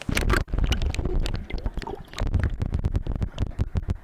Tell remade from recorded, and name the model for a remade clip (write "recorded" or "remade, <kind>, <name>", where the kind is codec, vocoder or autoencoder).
recorded